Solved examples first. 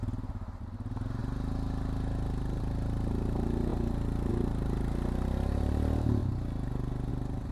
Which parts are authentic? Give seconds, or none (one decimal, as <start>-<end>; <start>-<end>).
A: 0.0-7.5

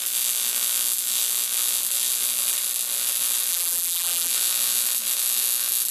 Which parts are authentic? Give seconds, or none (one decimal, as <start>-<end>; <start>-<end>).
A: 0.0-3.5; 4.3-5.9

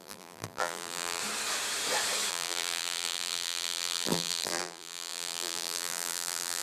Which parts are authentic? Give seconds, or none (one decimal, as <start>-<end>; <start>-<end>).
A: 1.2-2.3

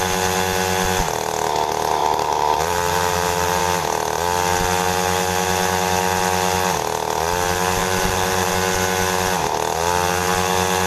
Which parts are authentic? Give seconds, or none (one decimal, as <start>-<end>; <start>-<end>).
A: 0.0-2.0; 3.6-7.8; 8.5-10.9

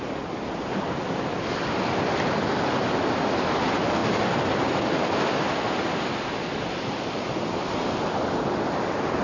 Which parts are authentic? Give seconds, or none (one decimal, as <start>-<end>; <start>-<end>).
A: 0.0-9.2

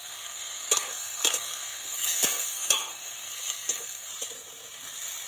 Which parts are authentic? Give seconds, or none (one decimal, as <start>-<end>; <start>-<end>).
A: 4.1-5.3